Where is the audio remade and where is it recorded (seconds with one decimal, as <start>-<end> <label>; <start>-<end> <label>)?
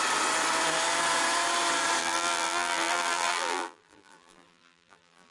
0.0-2.0 recorded; 2.0-5.3 remade